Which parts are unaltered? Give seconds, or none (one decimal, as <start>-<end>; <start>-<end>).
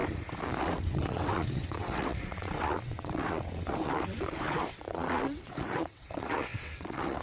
0.0-0.6